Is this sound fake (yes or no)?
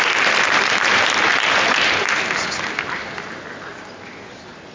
no